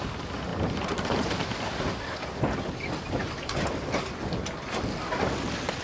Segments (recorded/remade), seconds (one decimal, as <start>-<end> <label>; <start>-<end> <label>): 0.0-0.5 recorded; 0.5-1.3 remade; 1.3-5.8 recorded